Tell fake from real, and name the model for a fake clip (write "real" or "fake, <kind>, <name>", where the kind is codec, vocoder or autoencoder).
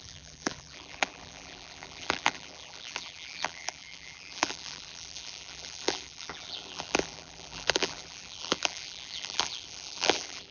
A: fake, vocoder, BigVGAN v2